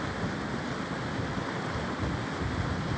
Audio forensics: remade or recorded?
recorded